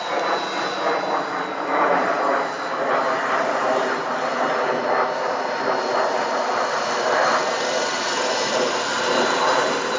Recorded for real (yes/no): no